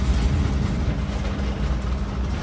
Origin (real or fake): real